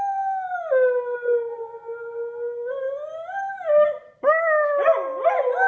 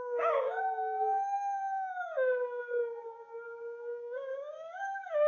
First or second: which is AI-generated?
second